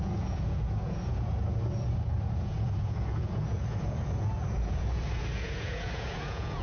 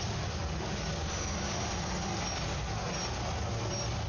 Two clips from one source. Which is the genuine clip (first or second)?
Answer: second